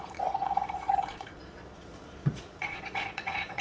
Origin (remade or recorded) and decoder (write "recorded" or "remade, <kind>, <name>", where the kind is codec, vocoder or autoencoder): remade, vocoder, Vocos